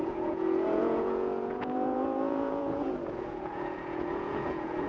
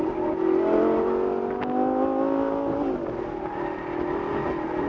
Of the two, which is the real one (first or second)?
second